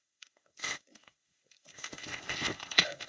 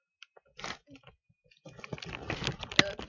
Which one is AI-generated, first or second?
first